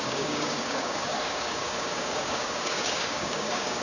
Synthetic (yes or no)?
yes